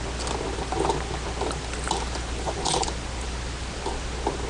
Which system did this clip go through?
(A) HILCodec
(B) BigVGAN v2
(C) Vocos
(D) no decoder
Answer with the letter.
D